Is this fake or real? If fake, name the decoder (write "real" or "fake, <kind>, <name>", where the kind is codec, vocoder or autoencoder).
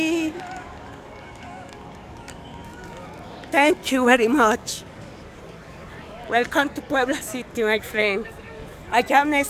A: fake, codec, DAC